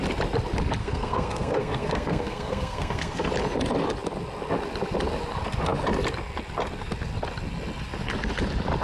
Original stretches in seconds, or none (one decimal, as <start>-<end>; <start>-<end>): 0.0-0.8; 3.3-8.8